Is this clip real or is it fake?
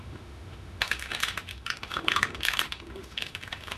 fake